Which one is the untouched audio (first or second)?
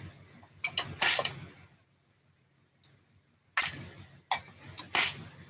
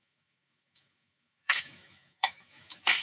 first